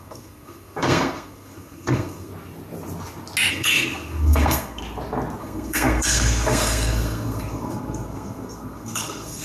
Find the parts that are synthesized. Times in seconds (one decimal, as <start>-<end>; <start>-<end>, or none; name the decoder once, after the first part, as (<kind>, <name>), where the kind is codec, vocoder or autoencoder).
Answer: 0.0-2.3 (codec, SNAC); 3.5-4.8; 5.4-9.4